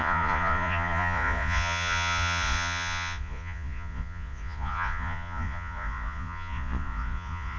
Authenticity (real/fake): fake